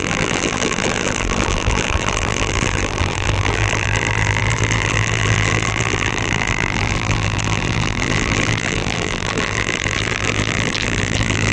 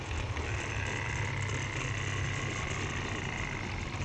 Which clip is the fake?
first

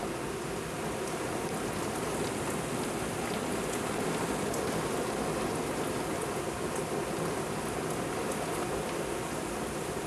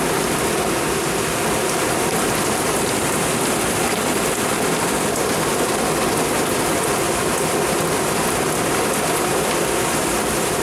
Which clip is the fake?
second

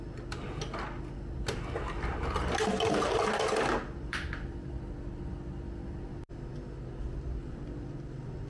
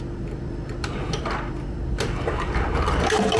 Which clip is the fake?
second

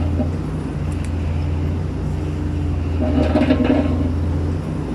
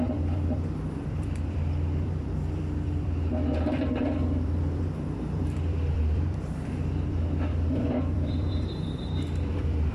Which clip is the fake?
second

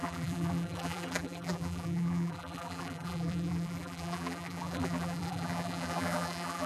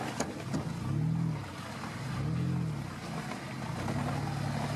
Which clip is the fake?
first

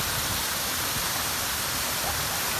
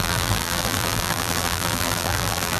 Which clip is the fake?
second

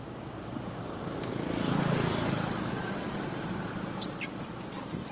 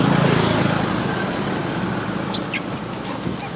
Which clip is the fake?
first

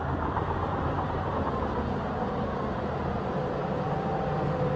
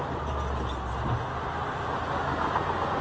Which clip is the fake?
first